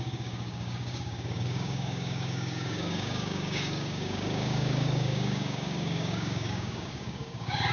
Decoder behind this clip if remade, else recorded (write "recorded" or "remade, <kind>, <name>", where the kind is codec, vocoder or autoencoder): remade, codec, DAC